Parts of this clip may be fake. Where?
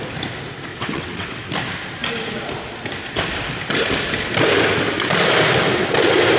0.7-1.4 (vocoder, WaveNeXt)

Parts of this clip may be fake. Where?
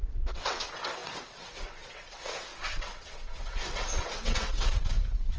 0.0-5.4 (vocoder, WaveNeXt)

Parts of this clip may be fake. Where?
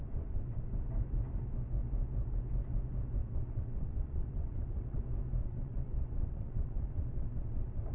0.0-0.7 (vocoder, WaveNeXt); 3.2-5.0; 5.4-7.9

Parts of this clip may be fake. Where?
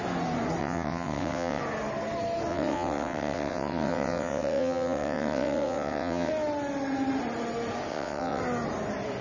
0.6-1.6 (vocoder, WaveNeXt); 2.5-6.3; 7.9-8.4